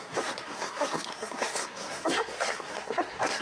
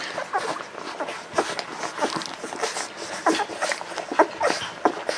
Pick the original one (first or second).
second